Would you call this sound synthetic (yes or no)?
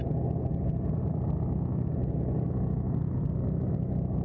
no